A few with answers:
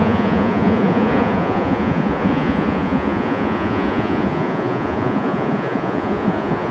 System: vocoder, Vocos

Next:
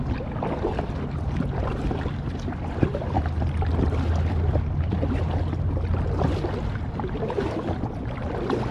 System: none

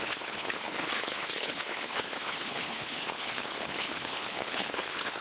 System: codec, HILCodec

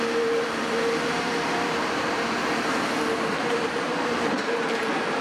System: vocoder, BigVGAN v2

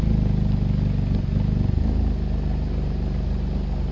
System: none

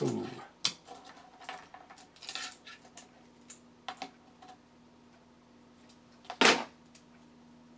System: none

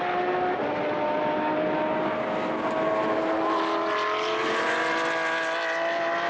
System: none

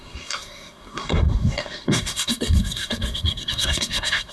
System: codec, SNAC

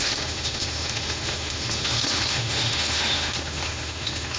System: autoencoder, DAC-VAE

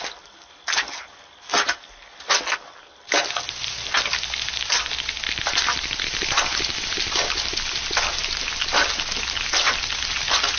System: none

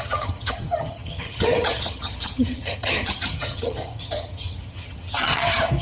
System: vocoder, HiFi-GAN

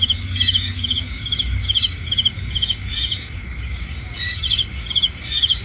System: codec, DAC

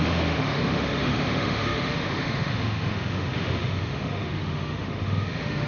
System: autoencoder, DAC-VAE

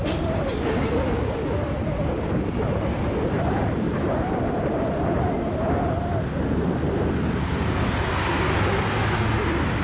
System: none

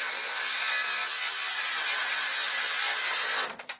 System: none